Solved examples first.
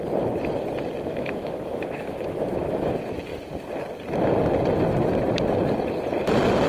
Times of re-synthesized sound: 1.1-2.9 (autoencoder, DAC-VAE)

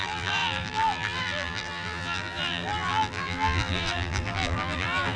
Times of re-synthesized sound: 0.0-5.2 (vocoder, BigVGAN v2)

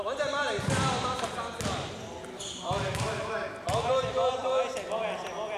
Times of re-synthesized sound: none

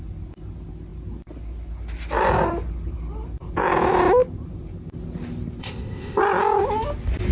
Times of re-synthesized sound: 5.6-6.2 (codec, ZipCodec)